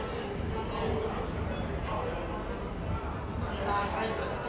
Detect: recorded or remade recorded